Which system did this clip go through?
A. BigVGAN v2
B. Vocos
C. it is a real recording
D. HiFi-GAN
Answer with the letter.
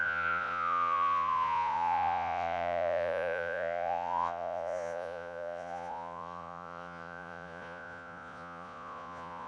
B